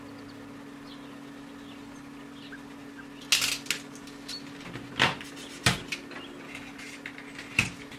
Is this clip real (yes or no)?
yes